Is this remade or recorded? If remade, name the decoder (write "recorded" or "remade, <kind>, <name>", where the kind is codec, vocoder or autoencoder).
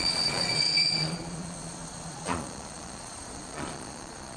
remade, vocoder, Vocos